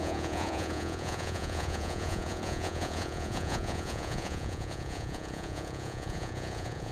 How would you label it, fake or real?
fake